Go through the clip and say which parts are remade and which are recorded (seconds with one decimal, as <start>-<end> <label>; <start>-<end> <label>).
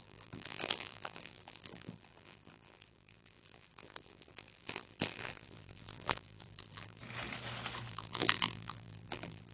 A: 0.0-7.0 remade; 7.0-7.9 recorded; 7.9-9.5 remade